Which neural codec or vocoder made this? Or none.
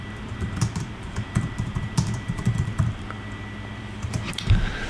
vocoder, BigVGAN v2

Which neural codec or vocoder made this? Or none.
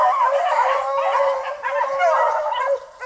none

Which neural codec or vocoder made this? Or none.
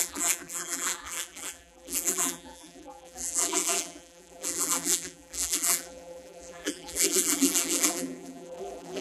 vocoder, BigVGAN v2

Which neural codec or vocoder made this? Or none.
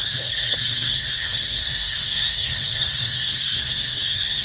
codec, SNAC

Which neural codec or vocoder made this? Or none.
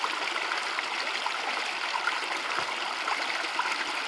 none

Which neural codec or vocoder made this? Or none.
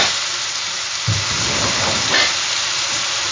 none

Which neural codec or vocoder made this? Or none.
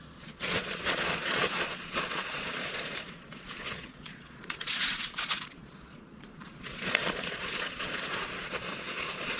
vocoder, Vocos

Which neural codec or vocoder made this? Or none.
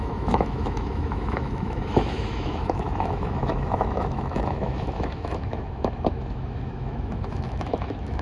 autoencoder, DAC-VAE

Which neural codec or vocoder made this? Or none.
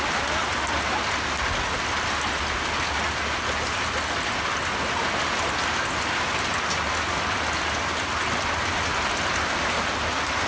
none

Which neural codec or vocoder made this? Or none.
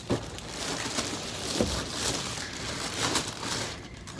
vocoder, BigVGAN v2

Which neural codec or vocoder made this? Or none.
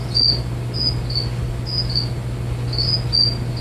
none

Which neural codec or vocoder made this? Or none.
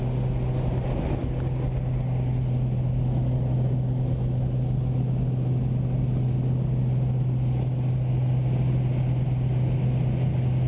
none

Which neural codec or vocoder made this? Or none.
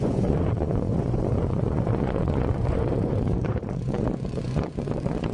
vocoder, Vocos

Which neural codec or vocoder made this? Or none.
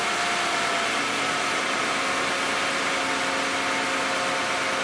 none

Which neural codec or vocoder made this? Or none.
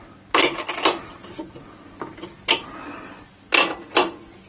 none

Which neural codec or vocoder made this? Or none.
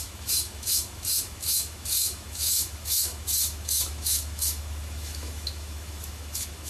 autoencoder, DAC-VAE